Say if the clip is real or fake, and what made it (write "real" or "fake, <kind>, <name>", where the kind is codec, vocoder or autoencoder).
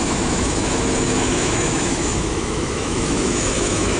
fake, autoencoder, DAC-VAE